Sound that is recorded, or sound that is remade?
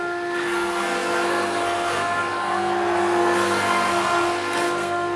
remade